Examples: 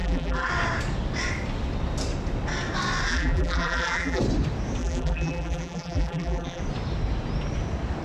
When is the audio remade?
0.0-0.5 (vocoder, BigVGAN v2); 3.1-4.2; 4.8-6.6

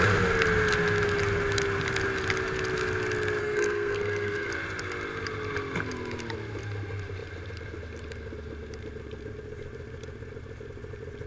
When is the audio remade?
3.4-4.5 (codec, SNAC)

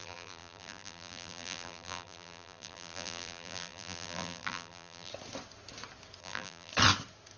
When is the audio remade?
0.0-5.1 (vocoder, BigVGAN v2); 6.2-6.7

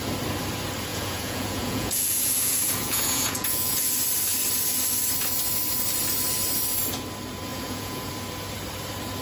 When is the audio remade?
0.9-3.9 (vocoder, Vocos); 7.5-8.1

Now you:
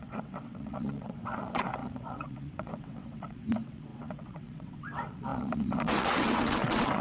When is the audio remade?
0.0-7.0 (vocoder, WaveNeXt)

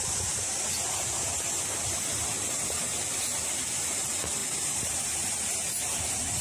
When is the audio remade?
4.4-5.3 (vocoder, BigVGAN v2)

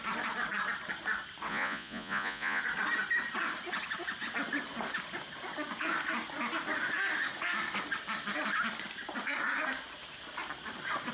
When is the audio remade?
1.5-2.6 (vocoder, Vocos)

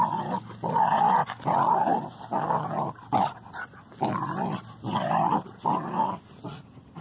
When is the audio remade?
none